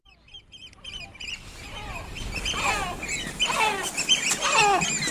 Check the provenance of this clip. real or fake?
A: real